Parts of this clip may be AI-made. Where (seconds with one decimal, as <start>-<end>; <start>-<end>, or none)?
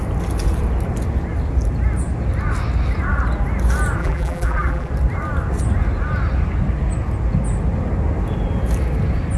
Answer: 4.0-4.9